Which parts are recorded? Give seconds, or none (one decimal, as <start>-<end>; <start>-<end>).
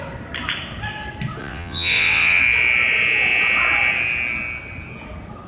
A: 0.0-1.4; 2.4-5.5